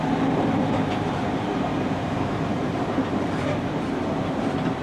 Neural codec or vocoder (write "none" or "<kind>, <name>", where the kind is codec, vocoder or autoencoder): vocoder, BigVGAN v2